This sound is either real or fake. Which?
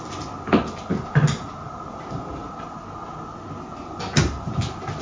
real